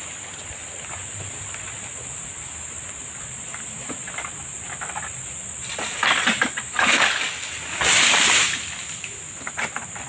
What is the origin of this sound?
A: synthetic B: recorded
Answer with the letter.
B